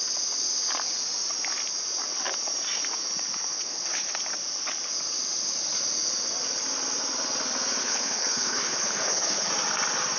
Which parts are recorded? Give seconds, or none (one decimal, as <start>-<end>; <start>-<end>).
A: 0.0-3.5; 4.1-7.8; 9.5-10.2